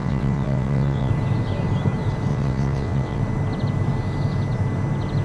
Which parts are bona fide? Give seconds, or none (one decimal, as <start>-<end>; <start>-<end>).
1.1-2.3; 3.2-5.2